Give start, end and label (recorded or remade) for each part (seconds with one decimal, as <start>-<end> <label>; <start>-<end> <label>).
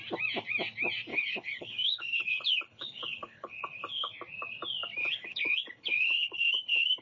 0.0-1.1 recorded; 1.1-4.1 remade; 4.1-5.0 recorded; 5.0-7.0 remade